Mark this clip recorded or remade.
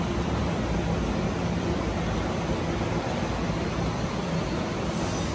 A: recorded